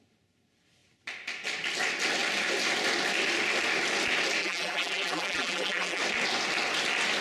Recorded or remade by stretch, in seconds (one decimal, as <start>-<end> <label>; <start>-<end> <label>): 0.0-4.4 recorded; 4.4-6.0 remade; 6.0-7.2 recorded